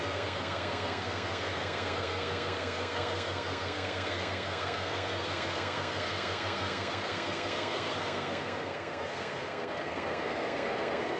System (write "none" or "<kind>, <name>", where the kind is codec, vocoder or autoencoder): codec, SNAC